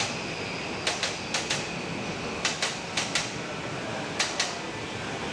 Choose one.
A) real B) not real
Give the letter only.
A